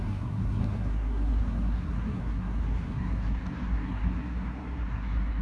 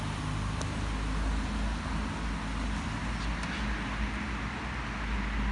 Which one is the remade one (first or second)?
first